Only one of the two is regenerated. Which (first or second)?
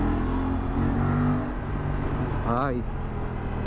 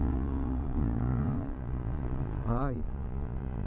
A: second